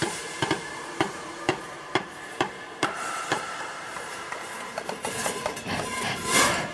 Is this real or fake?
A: fake